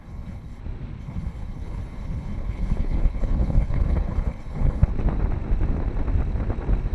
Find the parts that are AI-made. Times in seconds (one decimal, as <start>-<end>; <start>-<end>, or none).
0.0-0.6; 1.0-4.9